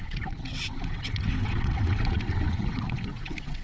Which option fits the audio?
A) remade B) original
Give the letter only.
A